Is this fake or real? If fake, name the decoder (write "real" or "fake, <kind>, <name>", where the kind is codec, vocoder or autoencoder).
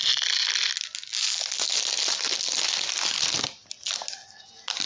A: real